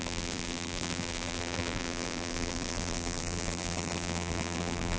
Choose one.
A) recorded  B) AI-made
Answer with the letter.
B